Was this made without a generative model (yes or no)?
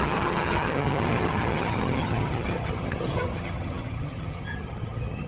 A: no